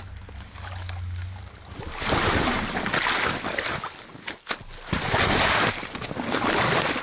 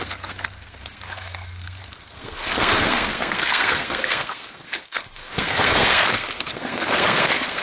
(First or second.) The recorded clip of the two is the first